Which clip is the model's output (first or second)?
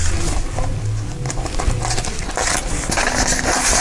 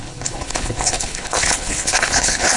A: second